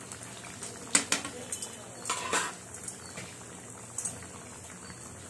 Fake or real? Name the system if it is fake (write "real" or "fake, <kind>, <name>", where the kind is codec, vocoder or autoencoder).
real